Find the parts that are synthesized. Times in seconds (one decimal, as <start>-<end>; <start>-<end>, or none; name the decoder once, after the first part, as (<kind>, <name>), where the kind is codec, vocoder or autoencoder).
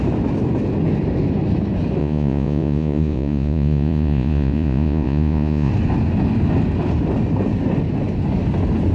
2.0-5.7 (vocoder, Vocos)